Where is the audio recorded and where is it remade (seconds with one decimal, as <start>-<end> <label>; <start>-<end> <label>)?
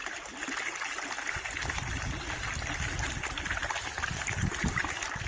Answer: 0.0-5.3 recorded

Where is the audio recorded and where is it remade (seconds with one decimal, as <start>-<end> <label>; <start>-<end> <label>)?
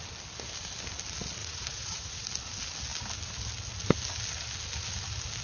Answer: 0.0-1.4 recorded; 1.4-2.3 remade; 2.3-5.4 recorded